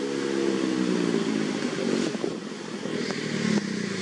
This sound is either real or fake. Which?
real